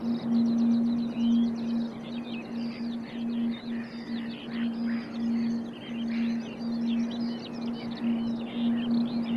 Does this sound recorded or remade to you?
recorded